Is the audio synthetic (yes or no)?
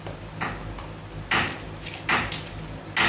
no